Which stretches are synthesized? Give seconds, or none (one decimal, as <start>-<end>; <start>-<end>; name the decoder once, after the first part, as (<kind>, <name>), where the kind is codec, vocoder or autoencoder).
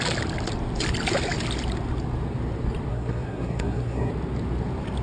2.9-4.1 (codec, SNAC)